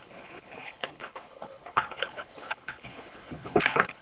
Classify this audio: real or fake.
fake